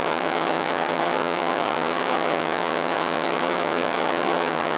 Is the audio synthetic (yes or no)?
yes